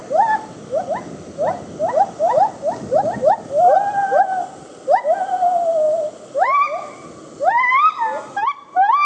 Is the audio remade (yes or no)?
no